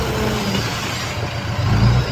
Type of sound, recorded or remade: recorded